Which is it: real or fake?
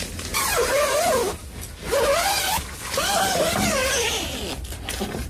real